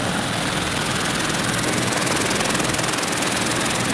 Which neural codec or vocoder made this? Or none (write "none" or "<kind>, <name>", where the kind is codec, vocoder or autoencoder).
none